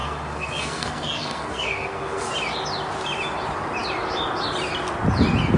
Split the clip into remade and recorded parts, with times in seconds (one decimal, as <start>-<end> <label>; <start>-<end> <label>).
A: 0.0-2.3 remade; 2.3-5.6 recorded